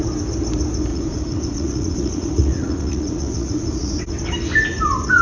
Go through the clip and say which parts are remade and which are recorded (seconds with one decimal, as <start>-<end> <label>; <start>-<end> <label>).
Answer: 0.0-0.9 recorded; 0.9-4.0 remade; 4.0-5.2 recorded